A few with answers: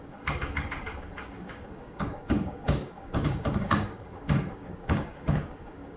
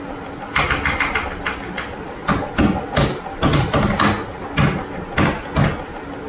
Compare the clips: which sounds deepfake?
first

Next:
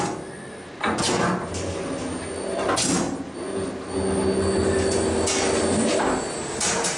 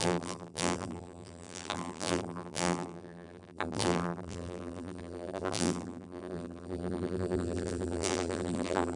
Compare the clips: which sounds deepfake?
second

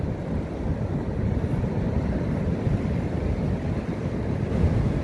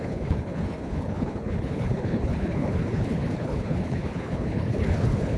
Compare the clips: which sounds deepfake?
second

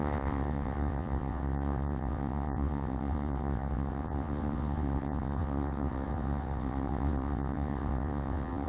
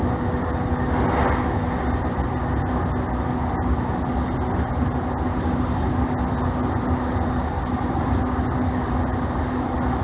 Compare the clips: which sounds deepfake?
first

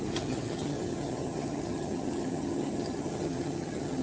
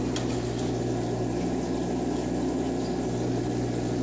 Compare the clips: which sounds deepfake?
first